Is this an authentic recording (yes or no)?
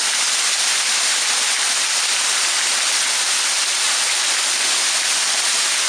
yes